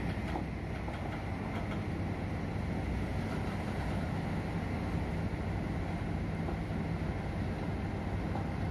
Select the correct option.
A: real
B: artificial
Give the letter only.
A